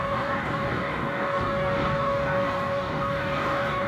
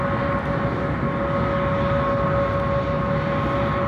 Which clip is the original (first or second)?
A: second